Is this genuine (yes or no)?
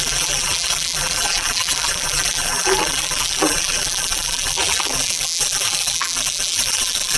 no